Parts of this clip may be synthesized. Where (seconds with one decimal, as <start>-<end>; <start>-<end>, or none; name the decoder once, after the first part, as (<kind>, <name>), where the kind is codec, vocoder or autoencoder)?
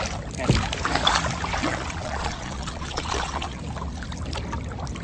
1.6-3.6 (vocoder, Vocos)